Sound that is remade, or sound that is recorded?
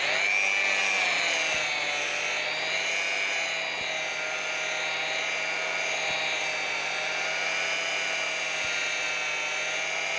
recorded